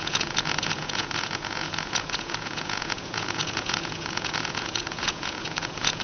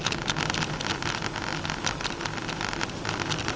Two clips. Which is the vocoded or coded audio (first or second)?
first